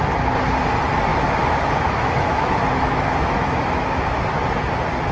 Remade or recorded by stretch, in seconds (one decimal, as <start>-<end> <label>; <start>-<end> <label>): 0.0-1.1 recorded; 1.1-4.2 remade; 4.2-5.1 recorded